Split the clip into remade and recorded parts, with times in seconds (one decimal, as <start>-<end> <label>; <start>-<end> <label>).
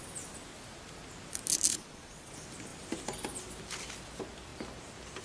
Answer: 0.0-1.7 recorded; 1.7-2.3 remade; 2.3-5.2 recorded